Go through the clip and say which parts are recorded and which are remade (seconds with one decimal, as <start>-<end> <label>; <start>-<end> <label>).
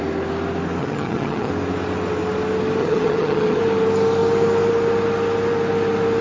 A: 0.0-0.8 recorded; 0.8-1.5 remade; 1.5-2.8 recorded; 2.8-3.6 remade; 3.6-6.2 recorded